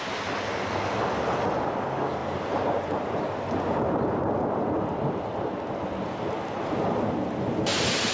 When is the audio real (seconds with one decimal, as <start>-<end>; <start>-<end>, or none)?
0.0-2.2; 4.2-8.1